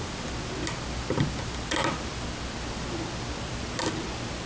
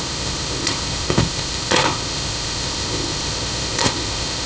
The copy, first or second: second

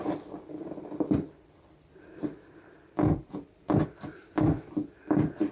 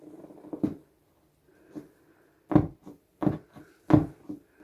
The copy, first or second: first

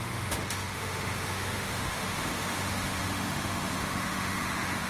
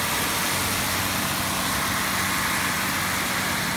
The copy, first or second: first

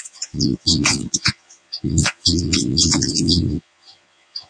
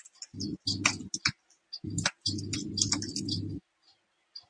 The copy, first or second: first